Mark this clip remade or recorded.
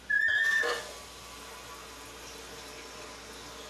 recorded